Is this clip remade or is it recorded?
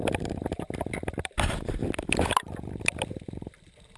remade